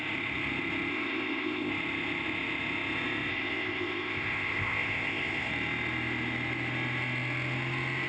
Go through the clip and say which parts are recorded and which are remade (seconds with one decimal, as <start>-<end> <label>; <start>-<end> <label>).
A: 0.0-0.9 recorded; 0.9-1.7 remade; 1.7-3.3 recorded; 3.3-5.5 remade; 5.5-8.1 recorded